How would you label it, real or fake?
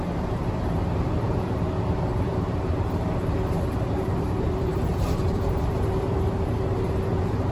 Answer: fake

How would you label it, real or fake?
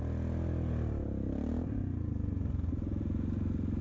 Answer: real